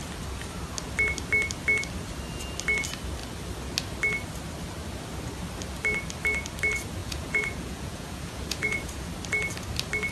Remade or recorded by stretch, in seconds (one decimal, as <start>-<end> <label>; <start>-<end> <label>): 0.0-7.0 recorded; 7.0-9.1 remade; 9.1-10.1 recorded